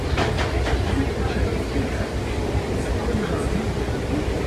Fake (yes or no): no